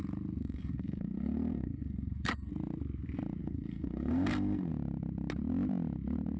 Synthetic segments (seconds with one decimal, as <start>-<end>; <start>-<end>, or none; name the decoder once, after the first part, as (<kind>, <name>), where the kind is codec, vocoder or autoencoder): 0.4-2.5 (codec, SNAC); 3.4-4.7